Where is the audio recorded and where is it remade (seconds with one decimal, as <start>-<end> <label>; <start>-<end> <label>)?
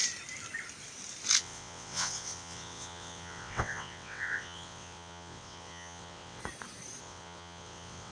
0.0-1.4 recorded; 1.4-6.4 remade; 6.4-7.0 recorded; 7.0-8.1 remade